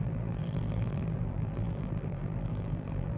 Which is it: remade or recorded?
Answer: remade